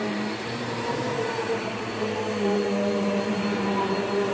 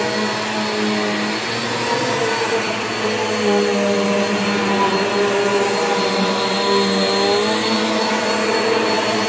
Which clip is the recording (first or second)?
second